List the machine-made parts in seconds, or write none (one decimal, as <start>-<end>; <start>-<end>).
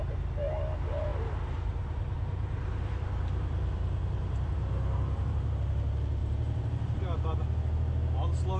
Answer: 1.1-5.5; 6.2-7.0